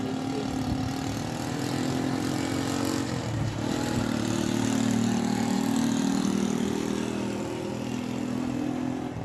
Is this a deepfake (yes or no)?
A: no